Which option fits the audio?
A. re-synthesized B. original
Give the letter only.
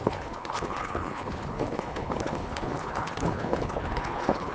A